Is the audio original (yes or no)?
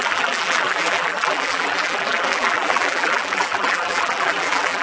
no